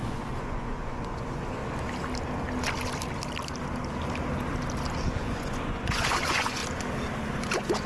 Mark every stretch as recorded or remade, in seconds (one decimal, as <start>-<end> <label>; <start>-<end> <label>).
0.0-1.6 remade; 1.6-5.2 recorded; 5.2-6.6 remade; 6.6-7.4 recorded; 7.4-7.9 remade